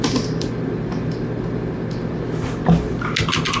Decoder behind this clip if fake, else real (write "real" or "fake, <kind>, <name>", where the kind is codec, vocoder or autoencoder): real